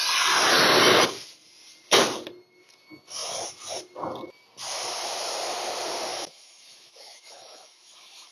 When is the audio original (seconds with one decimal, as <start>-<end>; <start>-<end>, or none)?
0.0-6.1